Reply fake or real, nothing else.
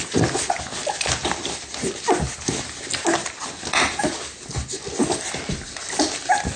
real